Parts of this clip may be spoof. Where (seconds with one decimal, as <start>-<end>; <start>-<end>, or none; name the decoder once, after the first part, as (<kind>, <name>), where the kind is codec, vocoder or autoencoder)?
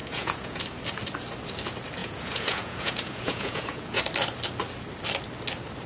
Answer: 0.0-0.6 (vocoder, Vocos); 2.0-4.0